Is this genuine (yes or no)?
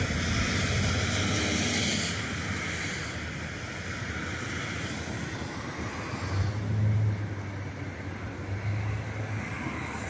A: yes